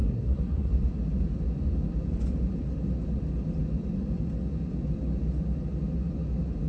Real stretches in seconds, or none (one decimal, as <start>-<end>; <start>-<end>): 0.7-6.7